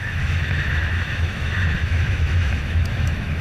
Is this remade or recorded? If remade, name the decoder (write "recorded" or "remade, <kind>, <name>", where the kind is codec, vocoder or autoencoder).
remade, autoencoder, DAC-VAE